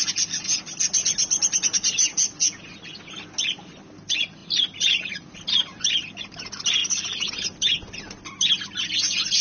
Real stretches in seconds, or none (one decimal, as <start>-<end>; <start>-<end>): 0.0-4.4; 5.4-6.8; 7.3-9.4